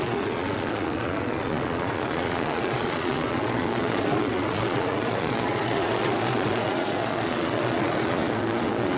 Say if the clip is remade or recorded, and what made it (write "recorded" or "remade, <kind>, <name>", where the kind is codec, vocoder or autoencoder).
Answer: remade, vocoder, Vocos